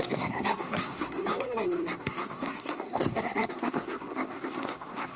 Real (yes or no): no